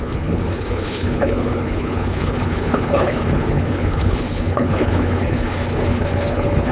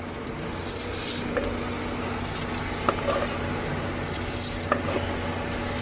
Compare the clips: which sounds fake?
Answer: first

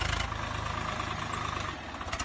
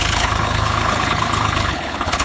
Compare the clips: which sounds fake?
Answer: second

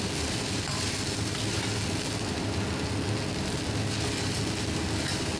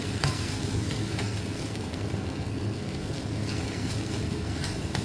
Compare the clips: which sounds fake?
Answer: second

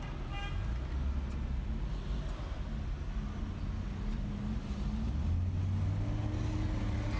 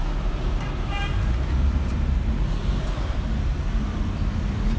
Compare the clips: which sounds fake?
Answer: second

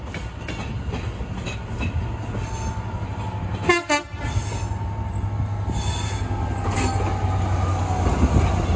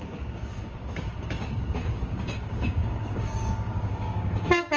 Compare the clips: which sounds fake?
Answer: second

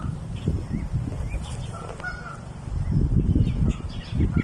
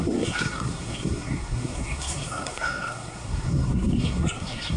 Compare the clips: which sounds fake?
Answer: second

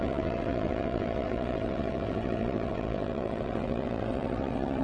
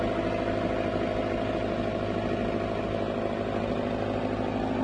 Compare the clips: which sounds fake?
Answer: first